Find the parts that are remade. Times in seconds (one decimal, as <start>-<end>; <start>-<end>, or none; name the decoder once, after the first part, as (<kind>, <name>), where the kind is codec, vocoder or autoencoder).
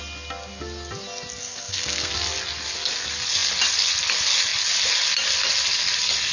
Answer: 1.4-2.1 (codec, SNAC)